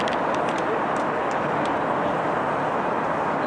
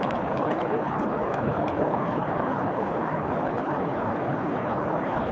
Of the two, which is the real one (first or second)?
first